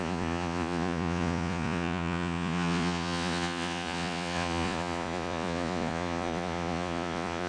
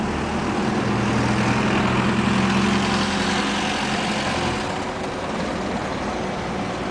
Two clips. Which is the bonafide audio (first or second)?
second